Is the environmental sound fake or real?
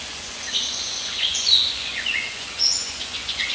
fake